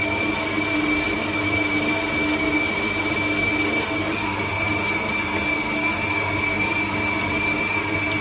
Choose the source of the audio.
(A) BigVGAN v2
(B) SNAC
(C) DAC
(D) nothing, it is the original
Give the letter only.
D